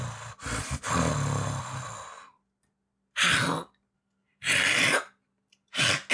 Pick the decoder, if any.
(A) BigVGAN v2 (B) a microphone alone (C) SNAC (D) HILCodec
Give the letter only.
B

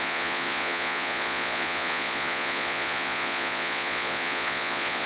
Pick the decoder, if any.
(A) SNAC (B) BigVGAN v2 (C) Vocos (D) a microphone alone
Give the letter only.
C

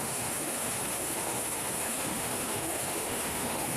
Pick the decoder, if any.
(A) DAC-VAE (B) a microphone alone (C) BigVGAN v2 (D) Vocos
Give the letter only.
A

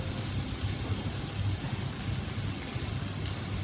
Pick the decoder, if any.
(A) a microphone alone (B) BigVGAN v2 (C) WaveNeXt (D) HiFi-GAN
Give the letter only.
A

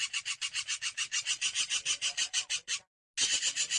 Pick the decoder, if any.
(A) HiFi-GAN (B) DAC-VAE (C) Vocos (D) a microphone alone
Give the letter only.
D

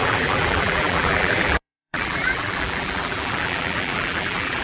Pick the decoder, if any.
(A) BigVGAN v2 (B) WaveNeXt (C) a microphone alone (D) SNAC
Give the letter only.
A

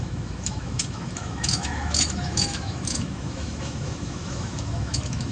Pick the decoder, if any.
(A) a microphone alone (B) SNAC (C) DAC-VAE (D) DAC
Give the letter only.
C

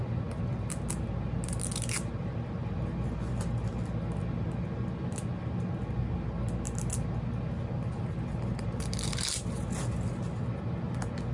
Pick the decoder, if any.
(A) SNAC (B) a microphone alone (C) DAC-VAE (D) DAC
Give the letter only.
B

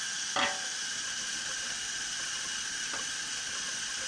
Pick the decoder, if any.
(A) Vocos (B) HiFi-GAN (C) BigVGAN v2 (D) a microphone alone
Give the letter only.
D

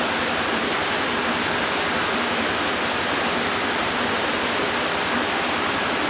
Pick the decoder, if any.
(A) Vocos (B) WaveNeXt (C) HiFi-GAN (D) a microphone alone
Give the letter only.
D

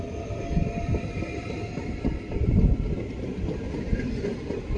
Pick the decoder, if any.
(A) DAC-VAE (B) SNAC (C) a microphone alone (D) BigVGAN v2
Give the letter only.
C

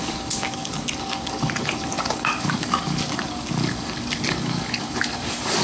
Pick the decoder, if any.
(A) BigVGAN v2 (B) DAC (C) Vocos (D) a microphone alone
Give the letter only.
B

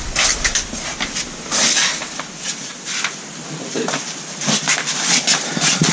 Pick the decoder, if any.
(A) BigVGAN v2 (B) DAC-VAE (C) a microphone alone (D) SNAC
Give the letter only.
C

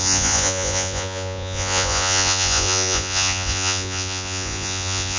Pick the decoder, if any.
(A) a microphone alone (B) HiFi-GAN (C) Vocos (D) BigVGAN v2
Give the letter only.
C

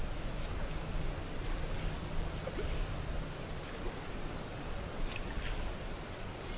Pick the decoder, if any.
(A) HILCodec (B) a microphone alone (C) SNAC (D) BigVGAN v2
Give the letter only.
B